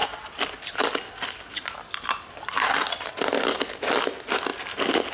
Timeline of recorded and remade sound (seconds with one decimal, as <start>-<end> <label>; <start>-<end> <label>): 0.0-5.1 recorded